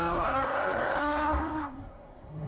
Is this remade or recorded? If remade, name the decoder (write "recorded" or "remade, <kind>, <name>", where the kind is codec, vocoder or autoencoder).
remade, codec, SNAC